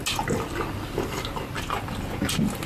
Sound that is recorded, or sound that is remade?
recorded